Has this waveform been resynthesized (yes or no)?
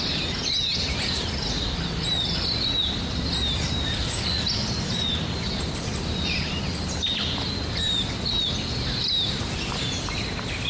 no